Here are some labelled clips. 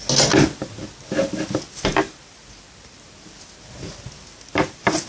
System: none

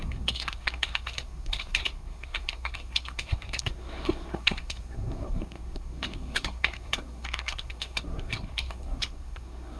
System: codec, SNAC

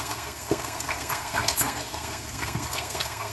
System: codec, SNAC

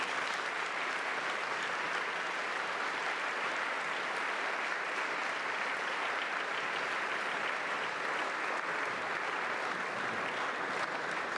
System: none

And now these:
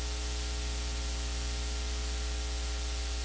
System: none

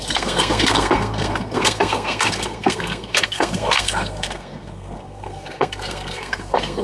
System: codec, SNAC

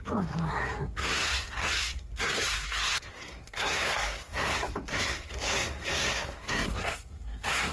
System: codec, SNAC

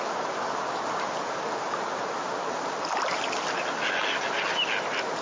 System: none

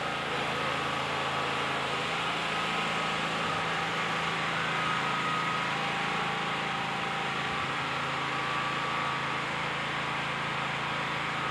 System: none